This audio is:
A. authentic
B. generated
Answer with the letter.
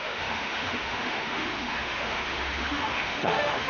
B